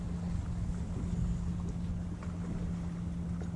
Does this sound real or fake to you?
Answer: real